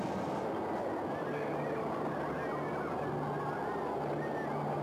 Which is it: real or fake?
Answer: real